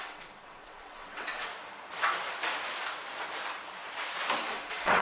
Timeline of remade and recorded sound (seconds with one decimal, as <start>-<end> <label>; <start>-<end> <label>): 0.0-1.5 remade; 1.5-4.5 recorded; 4.5-5.0 remade